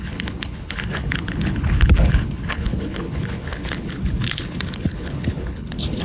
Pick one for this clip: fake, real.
fake